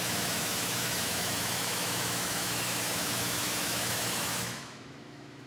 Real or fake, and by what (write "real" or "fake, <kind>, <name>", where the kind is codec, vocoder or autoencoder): fake, autoencoder, DAC-VAE